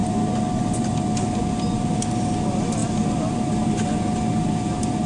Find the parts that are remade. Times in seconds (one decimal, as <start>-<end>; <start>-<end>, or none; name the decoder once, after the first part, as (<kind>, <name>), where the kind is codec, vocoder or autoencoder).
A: none